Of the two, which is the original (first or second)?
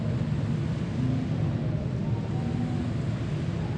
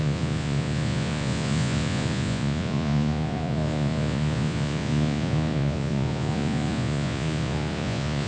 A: first